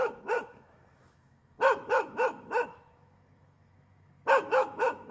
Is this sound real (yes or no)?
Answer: no